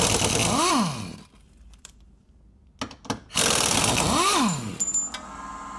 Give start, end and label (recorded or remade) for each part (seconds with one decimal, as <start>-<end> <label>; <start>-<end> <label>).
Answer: 0.0-5.8 recorded